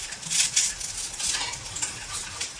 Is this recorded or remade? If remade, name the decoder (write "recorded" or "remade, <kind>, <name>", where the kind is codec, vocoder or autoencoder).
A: recorded